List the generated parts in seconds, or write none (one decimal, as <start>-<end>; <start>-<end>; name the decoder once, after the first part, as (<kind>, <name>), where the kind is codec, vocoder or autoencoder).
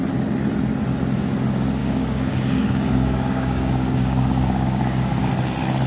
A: 1.8-5.3 (codec, DAC)